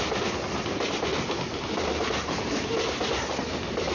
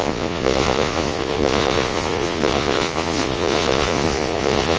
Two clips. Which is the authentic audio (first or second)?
first